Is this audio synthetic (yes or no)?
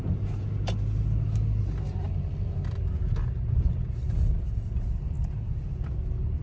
no